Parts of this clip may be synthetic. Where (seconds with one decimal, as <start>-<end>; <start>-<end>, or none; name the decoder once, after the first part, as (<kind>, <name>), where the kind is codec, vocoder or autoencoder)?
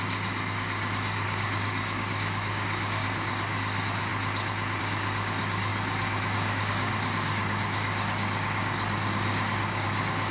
0.0-4.1 (codec, DAC); 4.8-10.3